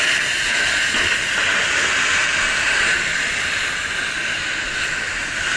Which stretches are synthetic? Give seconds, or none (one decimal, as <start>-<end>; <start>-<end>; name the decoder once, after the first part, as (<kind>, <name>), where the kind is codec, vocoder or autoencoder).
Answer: 2.2-3.8 (vocoder, BigVGAN v2); 4.2-4.7